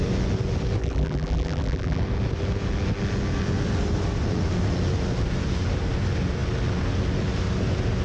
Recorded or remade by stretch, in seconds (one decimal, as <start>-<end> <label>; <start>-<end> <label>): 0.0-0.8 recorded; 0.8-2.0 remade; 2.0-8.0 recorded